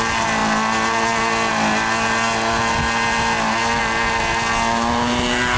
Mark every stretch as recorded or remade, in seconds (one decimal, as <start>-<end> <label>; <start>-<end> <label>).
0.0-5.6 recorded